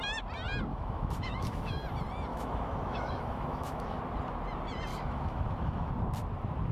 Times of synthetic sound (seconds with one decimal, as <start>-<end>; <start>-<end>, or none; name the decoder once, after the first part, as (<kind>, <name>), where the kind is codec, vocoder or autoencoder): 0.7-1.8 (autoencoder, DAC-VAE); 2.3-4.0; 4.9-5.9